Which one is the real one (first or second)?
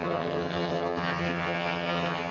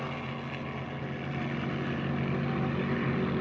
second